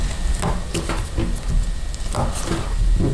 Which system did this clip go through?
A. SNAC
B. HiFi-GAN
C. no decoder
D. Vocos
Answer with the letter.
C